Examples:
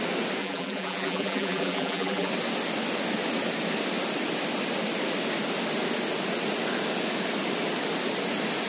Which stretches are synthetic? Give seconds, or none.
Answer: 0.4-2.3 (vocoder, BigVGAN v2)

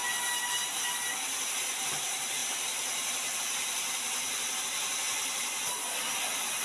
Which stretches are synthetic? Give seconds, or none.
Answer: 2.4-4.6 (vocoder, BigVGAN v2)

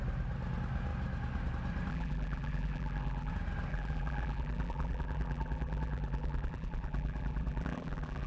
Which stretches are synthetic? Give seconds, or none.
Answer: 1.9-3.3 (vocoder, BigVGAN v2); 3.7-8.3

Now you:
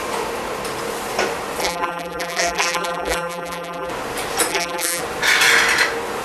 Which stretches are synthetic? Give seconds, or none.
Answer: 1.6-3.9 (vocoder, BigVGAN v2); 4.5-5.0